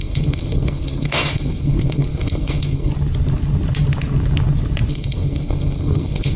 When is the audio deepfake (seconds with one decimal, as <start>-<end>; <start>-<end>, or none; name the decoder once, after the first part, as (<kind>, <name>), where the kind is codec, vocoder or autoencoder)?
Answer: 0.0-2.9 (codec, SNAC); 4.9-6.4